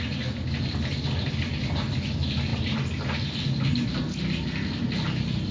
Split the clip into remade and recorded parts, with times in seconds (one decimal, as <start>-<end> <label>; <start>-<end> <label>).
0.0-5.5 recorded